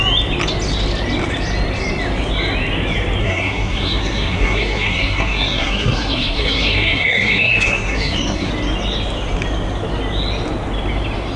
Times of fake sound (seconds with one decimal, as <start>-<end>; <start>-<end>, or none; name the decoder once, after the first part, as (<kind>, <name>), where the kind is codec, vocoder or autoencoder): 3.2-8.5 (codec, SNAC)